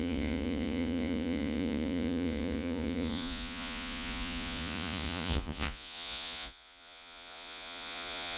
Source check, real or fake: fake